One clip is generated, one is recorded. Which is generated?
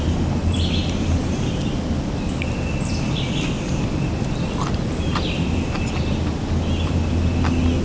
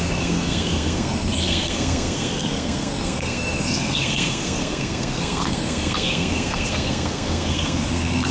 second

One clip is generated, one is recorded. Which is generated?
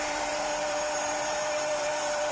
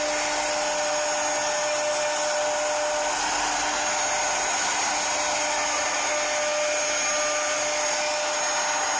first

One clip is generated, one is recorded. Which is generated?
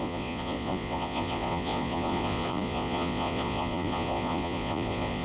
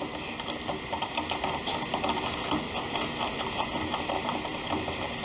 first